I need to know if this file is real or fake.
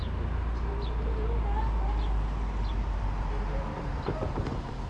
real